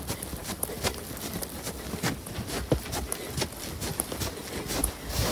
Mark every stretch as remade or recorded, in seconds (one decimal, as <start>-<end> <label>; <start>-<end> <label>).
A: 0.0-5.3 recorded